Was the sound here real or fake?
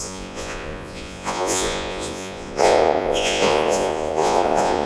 fake